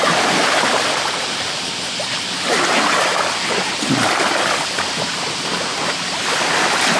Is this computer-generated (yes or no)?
no